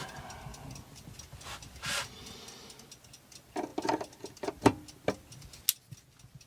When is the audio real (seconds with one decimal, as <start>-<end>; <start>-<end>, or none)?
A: 0.0-6.5